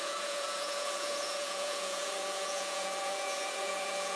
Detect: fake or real fake